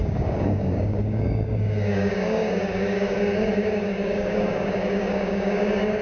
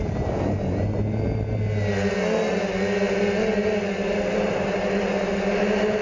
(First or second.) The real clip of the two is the second